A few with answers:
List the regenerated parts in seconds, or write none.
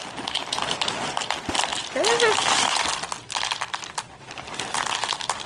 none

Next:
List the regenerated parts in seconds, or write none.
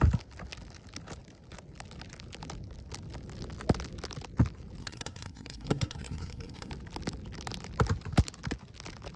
4.8-6.7 (codec, SNAC)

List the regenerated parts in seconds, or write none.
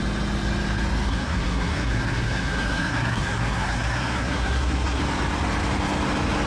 1.1-5.0 (codec, SNAC)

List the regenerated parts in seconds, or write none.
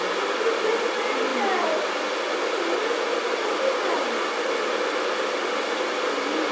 none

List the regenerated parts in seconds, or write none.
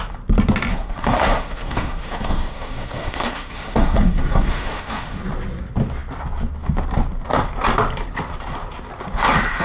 0.7-5.2 (codec, SNAC)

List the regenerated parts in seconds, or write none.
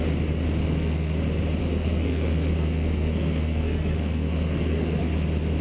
0.6-1.2 (codec, SNAC); 1.6-5.0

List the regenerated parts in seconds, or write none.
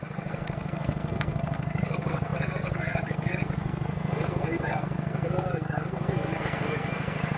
0.0-7.4 (codec, SNAC)